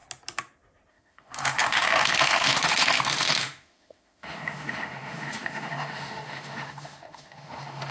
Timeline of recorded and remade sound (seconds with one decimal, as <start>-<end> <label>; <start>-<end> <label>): 0.0-0.9 recorded; 0.9-7.9 remade